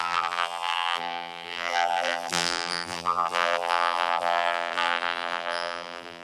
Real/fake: fake